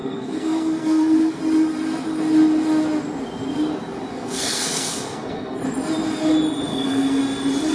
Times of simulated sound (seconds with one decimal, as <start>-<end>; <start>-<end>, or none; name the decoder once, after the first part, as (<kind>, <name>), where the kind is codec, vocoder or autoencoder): 0.0-1.4 (codec, SNAC); 4.1-5.6; 6.7-7.2